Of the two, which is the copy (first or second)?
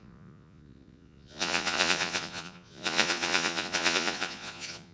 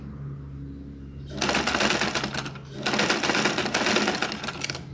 first